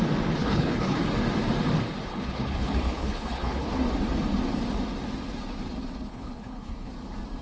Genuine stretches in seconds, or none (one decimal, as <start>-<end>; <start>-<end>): 0.0-0.4; 1.0-2.1; 3.7-6.1; 6.9-7.4